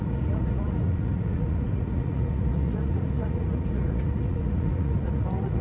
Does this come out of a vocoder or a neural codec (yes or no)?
yes